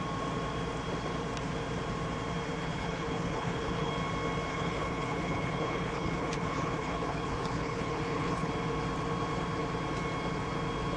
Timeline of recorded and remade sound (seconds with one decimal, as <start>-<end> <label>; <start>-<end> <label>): 0.0-2.5 recorded; 2.5-3.9 remade; 3.9-4.5 recorded; 4.5-8.5 remade; 8.5-11.0 recorded